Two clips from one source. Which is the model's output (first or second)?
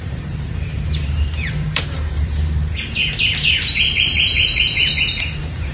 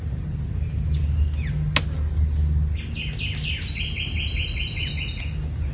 first